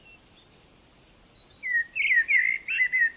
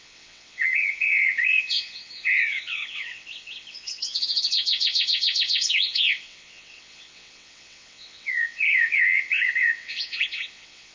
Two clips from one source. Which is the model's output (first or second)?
second